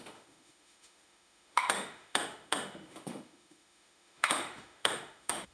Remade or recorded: remade